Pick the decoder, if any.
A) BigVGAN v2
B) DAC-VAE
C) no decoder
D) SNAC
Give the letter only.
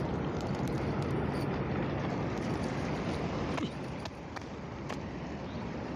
C